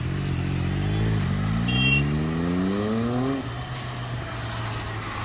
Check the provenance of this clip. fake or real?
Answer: real